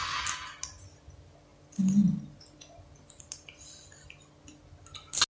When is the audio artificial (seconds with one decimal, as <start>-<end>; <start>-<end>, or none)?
none